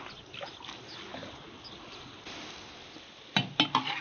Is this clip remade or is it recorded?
recorded